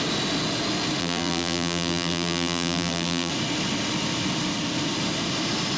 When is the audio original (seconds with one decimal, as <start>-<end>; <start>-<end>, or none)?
0.0-1.0; 3.3-5.8